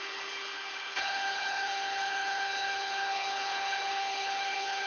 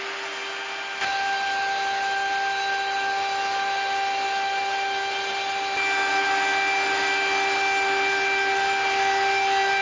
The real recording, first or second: second